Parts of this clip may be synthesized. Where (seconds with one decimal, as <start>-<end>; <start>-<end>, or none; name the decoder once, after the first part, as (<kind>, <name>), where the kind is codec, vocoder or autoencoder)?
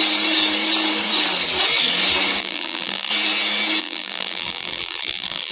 2.4-3.1 (vocoder, BigVGAN v2); 3.8-5.5